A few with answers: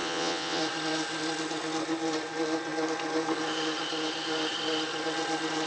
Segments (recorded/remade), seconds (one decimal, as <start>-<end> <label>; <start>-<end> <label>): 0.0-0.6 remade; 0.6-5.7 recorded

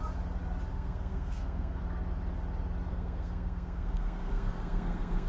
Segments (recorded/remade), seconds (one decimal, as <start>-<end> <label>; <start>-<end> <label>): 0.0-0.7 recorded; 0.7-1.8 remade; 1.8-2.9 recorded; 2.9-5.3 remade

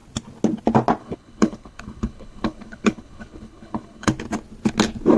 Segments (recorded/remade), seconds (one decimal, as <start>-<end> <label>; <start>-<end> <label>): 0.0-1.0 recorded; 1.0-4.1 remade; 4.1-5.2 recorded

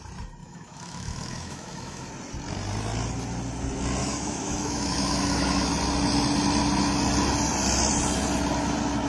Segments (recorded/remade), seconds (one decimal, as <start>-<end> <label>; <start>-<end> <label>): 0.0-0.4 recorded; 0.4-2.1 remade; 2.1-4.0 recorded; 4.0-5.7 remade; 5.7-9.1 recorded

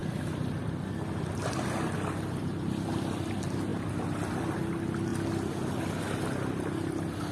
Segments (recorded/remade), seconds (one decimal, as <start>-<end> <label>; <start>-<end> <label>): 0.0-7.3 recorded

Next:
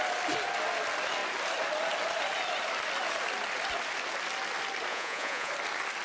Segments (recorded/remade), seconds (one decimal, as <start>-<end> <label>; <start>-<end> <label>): 0.0-4.9 recorded; 4.9-5.5 remade; 5.5-6.0 recorded